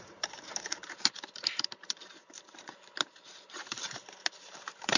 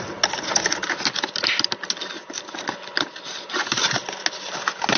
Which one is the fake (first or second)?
first